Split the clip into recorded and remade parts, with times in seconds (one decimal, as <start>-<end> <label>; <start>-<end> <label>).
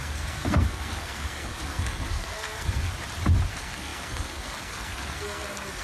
0.0-2.9 remade; 2.9-3.5 recorded; 3.5-5.8 remade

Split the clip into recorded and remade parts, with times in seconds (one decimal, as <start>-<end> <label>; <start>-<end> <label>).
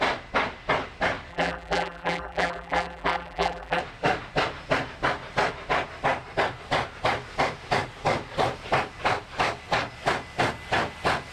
0.0-1.3 recorded; 1.3-3.8 remade; 3.8-11.3 recorded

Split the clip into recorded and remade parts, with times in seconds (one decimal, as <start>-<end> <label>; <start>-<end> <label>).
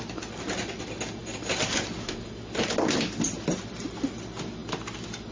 0.0-5.3 recorded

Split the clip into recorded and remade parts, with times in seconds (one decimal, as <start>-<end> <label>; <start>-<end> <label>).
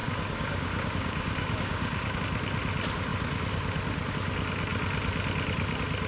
0.0-2.2 remade; 2.2-6.1 recorded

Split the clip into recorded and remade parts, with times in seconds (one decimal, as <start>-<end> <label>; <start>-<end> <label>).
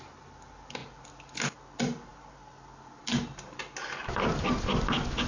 0.0-4.0 recorded; 4.0-4.6 remade; 4.6-5.3 recorded